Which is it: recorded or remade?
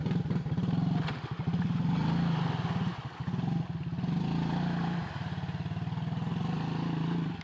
recorded